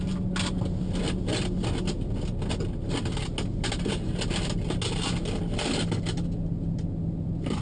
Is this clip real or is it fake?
real